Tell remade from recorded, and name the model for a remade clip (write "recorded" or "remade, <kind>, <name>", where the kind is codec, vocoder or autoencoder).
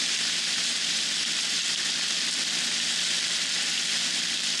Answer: recorded